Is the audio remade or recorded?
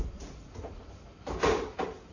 recorded